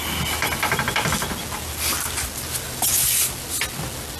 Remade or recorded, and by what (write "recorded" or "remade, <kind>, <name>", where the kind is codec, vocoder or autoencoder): recorded